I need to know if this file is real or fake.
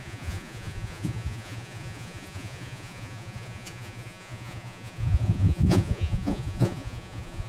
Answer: fake